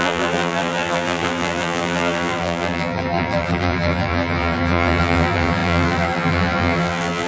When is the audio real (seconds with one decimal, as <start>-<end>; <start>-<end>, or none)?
none